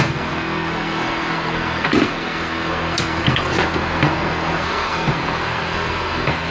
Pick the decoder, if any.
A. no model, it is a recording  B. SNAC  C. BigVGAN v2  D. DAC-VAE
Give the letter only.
B